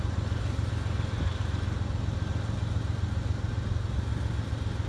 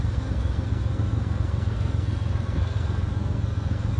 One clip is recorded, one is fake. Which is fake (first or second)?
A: second